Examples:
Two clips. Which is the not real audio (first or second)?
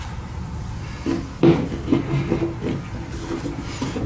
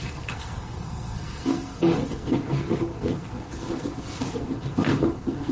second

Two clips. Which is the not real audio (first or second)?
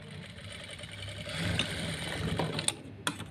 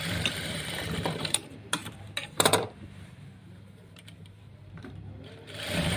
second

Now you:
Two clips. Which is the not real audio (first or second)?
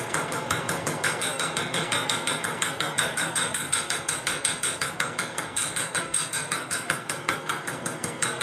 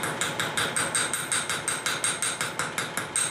first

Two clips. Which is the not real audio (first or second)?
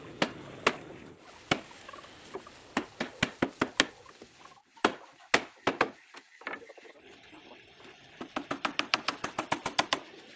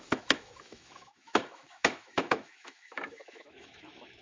second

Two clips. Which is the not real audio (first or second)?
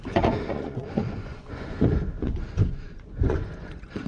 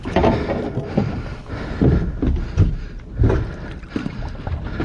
first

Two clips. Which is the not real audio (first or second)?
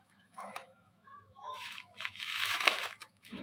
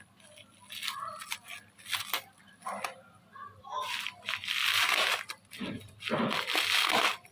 first